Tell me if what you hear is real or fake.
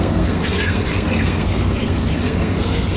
fake